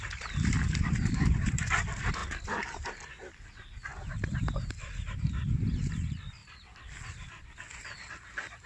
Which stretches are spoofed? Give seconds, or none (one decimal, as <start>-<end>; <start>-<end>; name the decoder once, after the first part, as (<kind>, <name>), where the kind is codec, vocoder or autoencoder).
0.0-2.2 (vocoder, BigVGAN v2); 4.7-6.4; 8.1-8.7